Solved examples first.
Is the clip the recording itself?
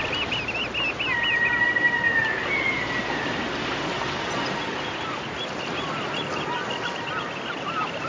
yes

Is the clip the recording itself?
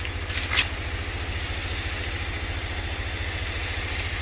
yes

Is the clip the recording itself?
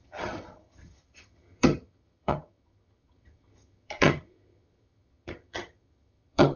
no